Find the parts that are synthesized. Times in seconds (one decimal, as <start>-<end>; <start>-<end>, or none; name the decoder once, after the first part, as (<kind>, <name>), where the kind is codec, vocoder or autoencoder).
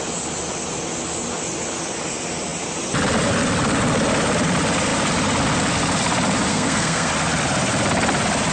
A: 6.5-7.1 (codec, SNAC)